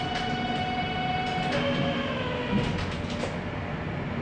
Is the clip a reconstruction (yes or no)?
no